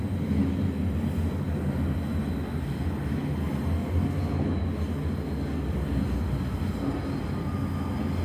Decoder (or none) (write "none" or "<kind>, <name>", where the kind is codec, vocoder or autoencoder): none